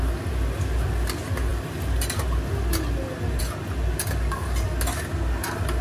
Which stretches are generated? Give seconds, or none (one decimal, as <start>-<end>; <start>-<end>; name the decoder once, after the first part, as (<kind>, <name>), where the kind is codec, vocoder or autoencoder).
none